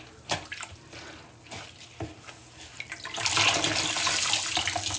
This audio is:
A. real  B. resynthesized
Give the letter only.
A